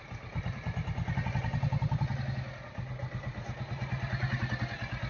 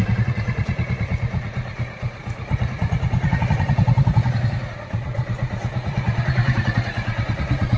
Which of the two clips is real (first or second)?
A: first